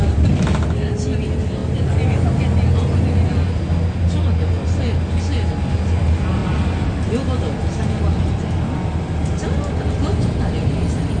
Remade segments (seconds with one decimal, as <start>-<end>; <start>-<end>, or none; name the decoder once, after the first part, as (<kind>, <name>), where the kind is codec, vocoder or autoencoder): none